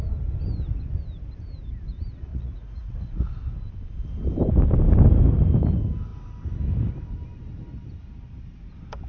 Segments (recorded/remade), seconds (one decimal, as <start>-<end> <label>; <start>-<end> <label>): 0.0-2.3 recorded; 2.3-3.3 remade; 3.3-9.1 recorded